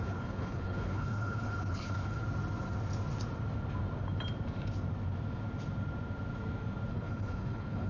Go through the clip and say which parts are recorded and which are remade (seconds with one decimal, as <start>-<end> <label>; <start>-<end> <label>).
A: 0.0-2.2 remade; 2.2-6.9 recorded; 6.9-7.9 remade